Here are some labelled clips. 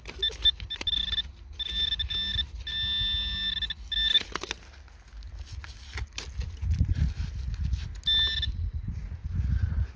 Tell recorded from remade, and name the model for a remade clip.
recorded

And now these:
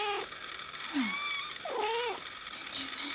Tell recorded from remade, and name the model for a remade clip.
recorded